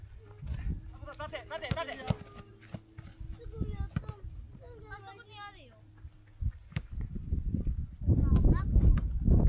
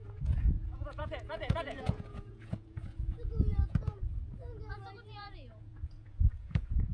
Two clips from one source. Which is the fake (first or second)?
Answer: second